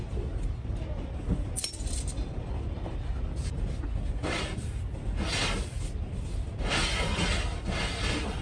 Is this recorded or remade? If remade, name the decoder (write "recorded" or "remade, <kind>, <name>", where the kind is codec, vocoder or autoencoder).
recorded